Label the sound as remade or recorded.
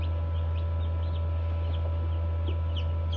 recorded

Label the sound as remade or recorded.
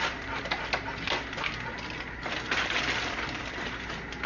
recorded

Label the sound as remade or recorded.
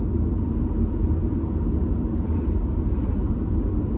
recorded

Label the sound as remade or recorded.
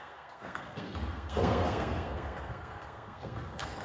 remade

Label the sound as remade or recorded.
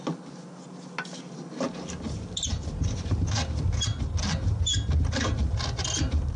recorded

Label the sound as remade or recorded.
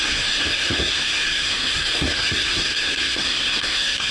remade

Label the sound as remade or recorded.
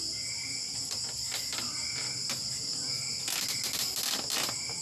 recorded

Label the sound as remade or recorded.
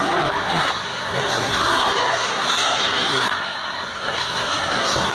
remade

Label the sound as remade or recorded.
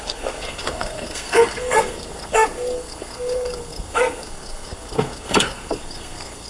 remade